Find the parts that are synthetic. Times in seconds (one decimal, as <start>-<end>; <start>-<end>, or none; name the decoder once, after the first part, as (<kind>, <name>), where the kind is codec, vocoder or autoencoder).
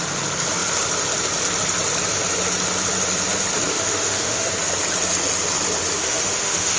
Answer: 3.7-4.5 (autoencoder, DAC-VAE); 6.0-6.8